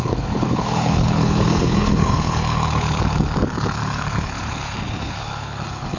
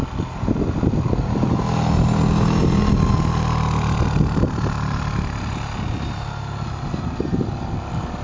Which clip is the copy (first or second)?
first